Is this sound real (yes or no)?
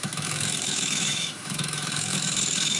no